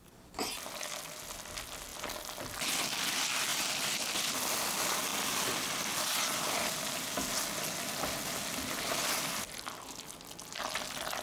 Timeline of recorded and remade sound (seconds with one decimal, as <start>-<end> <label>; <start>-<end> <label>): 0.0-11.2 recorded